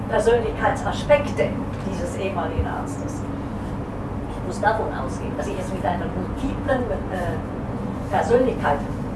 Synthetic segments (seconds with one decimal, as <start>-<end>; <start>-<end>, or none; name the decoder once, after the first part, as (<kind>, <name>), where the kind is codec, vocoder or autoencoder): 0.0-0.7 (vocoder, Vocos); 5.4-8.4